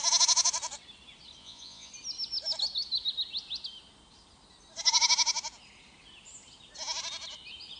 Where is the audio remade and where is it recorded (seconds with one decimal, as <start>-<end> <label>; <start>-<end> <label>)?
0.0-1.4 recorded; 1.4-1.9 remade; 1.9-7.8 recorded

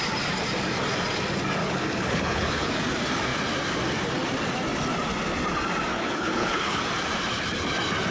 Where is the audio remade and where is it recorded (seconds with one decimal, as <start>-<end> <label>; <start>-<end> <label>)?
0.0-1.6 recorded; 1.6-2.7 remade; 2.7-5.9 recorded; 5.9-6.8 remade; 6.8-8.1 recorded

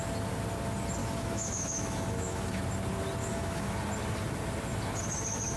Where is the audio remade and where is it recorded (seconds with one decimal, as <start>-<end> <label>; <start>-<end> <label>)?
0.0-1.0 recorded; 1.0-2.6 remade; 2.6-3.2 recorded; 3.2-3.8 remade; 3.8-5.6 recorded

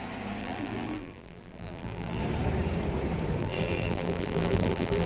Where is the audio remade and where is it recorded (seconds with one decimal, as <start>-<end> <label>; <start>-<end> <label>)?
0.0-0.4 recorded; 0.4-2.2 remade; 2.2-3.4 recorded; 3.4-5.1 remade

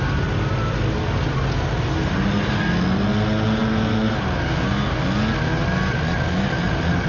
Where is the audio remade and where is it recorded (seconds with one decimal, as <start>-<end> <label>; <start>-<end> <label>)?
0.0-7.1 recorded

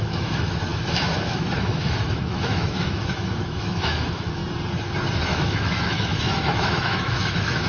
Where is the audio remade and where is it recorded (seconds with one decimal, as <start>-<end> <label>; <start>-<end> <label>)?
0.0-4.4 remade; 4.4-5.2 recorded; 5.2-7.7 remade

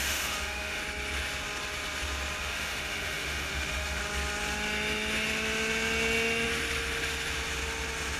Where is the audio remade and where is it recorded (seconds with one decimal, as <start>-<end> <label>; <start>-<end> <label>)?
0.0-0.8 remade; 0.8-2.4 recorded; 2.4-4.0 remade; 4.0-8.2 recorded

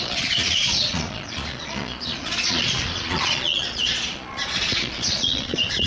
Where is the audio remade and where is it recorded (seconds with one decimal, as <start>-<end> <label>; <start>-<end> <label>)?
0.0-5.9 remade